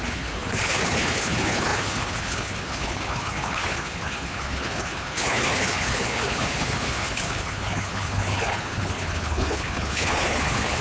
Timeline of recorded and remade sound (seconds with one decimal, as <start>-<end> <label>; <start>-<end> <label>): 0.0-10.8 remade